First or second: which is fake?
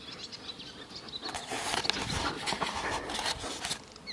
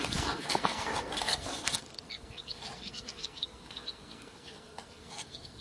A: second